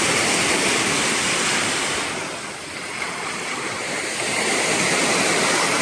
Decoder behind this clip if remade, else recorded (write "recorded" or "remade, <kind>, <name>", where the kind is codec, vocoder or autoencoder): remade, vocoder, BigVGAN v2